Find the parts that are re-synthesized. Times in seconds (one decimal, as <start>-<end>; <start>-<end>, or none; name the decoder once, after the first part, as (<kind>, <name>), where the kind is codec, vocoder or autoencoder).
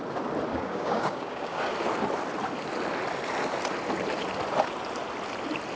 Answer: 0.5-1.6 (codec, DAC)